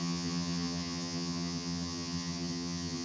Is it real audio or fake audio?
fake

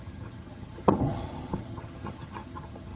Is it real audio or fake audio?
fake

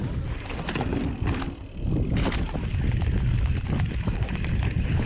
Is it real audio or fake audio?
real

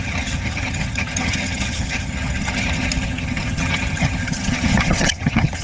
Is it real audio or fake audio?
fake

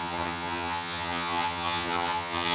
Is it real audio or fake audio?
fake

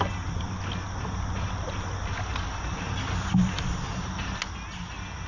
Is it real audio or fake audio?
real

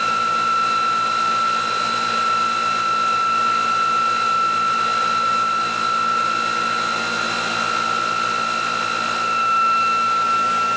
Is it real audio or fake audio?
real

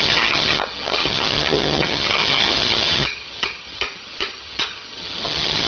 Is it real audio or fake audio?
fake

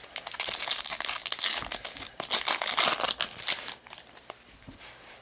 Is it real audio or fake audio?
real